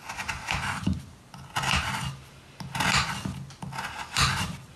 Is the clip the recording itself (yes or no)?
yes